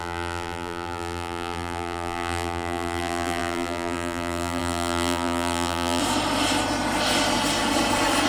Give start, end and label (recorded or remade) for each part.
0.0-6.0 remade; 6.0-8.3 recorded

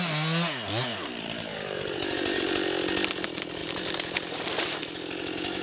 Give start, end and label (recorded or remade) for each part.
0.0-0.9 recorded; 0.9-2.4 remade; 2.4-3.6 recorded; 3.6-4.8 remade; 4.8-5.6 recorded

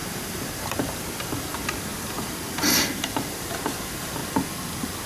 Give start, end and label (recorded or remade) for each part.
0.0-4.2 remade; 4.2-5.1 recorded

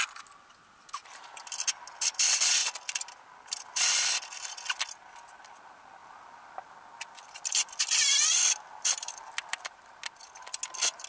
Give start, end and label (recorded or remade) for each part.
0.0-6.0 recorded; 6.0-10.0 remade; 10.0-11.1 recorded

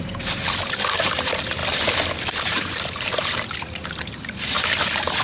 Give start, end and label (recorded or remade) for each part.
0.0-1.6 remade; 1.6-2.3 recorded; 2.3-5.2 remade

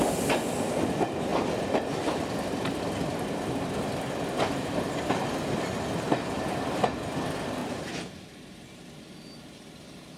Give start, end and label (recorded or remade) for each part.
0.0-7.6 recorded; 7.6-8.8 remade; 8.8-10.2 recorded

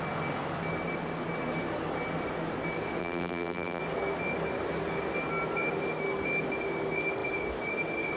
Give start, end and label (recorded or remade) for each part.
0.0-3.0 recorded; 3.0-3.8 remade; 3.8-8.2 recorded